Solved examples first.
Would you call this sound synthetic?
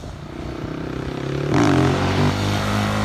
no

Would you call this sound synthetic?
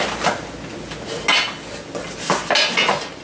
no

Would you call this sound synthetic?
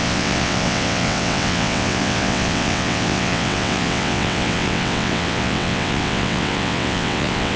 yes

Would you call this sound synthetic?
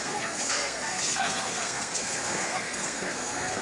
yes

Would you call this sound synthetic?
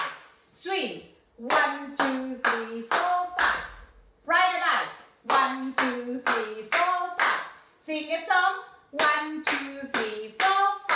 no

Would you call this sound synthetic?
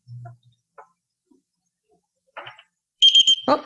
no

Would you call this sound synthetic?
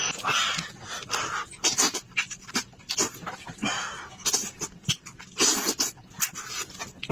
no